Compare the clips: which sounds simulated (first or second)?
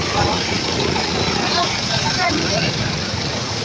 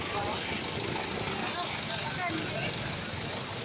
first